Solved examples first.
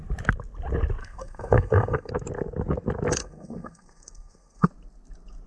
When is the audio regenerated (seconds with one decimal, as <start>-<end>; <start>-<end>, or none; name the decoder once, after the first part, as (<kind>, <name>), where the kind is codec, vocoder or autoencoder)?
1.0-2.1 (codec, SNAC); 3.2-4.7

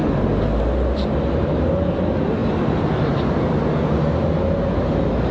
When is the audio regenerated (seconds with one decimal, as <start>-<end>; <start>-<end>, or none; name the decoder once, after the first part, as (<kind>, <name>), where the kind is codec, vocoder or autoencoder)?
none

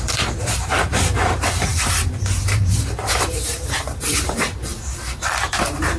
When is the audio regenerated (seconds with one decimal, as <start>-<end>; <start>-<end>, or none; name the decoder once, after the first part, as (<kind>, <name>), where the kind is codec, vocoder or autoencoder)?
0.0-6.0 (vocoder, BigVGAN v2)

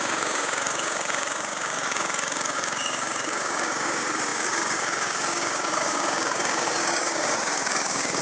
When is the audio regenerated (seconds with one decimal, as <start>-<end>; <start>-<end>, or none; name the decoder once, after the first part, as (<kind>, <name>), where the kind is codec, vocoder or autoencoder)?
0.0-8.2 (codec, DAC)

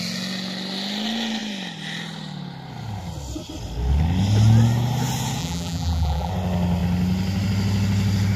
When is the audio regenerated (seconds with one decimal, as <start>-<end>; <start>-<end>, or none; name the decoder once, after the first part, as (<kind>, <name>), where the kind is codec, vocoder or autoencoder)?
5.4-6.3 (vocoder, BigVGAN v2)

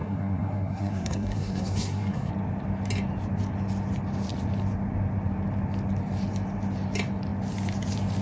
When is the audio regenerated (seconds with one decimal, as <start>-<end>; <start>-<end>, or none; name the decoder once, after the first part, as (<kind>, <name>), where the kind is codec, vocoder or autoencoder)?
0.0-2.3 (codec, SNAC)

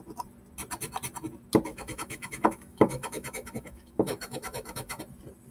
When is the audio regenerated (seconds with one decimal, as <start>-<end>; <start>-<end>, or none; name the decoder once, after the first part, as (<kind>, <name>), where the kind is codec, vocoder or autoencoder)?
1.7-5.0 (autoencoder, DAC-VAE)

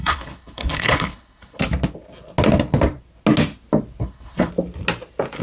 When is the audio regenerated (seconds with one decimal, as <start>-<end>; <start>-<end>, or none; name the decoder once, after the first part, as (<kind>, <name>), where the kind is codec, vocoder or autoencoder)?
0.0-1.6 (codec, HILCodec); 4.0-4.5